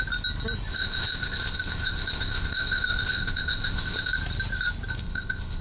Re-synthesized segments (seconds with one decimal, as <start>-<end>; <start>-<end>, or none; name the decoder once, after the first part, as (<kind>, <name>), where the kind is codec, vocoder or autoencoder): 0.7-4.1 (codec, ZipCodec); 5.0-5.6